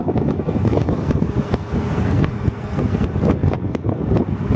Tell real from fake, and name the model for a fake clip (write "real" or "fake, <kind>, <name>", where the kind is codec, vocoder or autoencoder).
fake, codec, SNAC